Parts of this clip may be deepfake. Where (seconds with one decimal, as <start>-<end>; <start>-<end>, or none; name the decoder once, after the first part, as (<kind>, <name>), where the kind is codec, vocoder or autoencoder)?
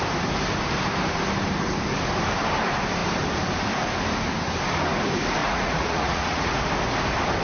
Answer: 5.4-6.5 (vocoder, Vocos)